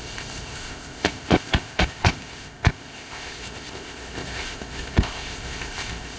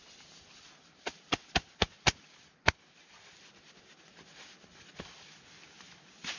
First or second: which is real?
second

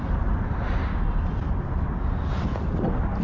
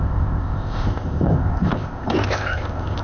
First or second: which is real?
first